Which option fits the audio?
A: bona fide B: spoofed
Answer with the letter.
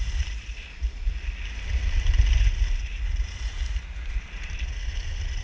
A